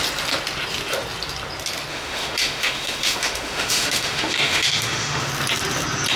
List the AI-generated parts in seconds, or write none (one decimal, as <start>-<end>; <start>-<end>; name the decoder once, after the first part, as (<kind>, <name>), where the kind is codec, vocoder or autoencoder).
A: 1.9-5.3 (autoencoder, DAC-VAE)